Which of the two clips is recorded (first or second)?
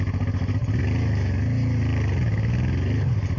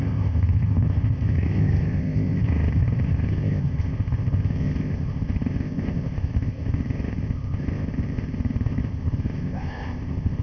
first